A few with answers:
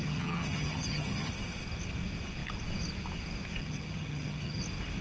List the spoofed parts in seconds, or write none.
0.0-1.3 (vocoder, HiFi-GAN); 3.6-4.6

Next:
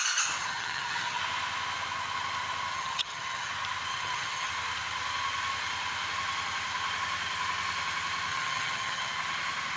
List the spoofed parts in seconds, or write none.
0.4-1.2 (vocoder, HiFi-GAN); 2.7-3.5; 3.9-4.5; 8.3-9.1

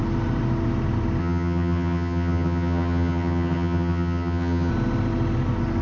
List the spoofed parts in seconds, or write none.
1.2-4.7 (vocoder, HiFi-GAN)

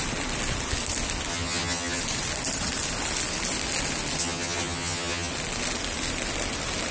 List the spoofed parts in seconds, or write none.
1.3-2.0 (vocoder, HiFi-GAN); 4.2-5.3